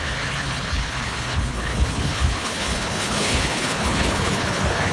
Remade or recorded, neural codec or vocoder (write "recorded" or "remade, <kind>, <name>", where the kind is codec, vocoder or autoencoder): remade, codec, HILCodec